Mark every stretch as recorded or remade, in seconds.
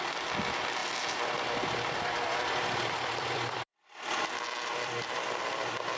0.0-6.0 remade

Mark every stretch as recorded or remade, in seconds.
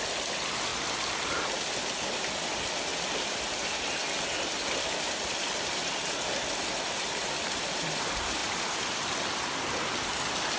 0.0-2.9 remade; 2.9-7.5 recorded; 7.5-8.4 remade; 8.4-9.9 recorded; 9.9-10.6 remade